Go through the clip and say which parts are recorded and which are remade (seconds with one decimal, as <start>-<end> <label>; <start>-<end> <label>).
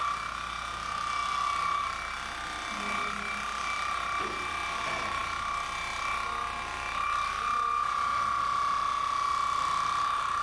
0.0-10.4 recorded